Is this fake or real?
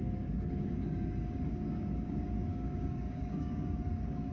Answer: fake